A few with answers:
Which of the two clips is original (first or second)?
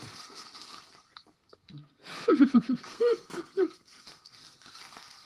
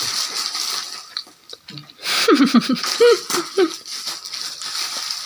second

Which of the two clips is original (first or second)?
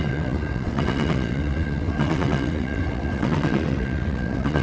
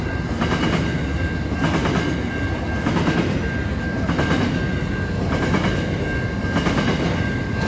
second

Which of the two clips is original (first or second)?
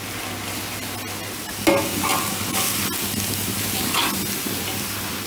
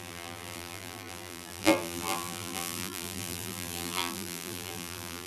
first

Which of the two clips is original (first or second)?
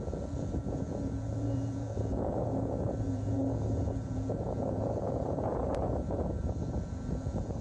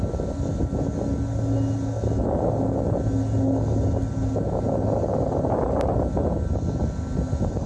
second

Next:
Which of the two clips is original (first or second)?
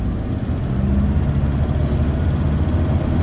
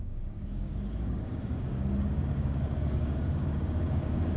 first